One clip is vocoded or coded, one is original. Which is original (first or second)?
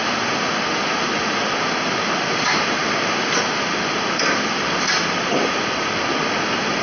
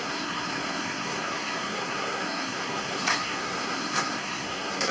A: first